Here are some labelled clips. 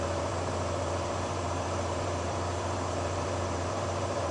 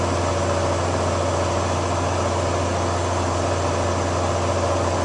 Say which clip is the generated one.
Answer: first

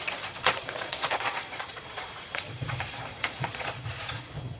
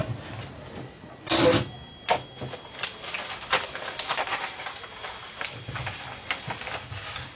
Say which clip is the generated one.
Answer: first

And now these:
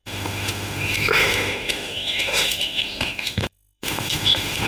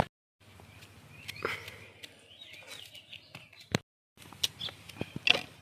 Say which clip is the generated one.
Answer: first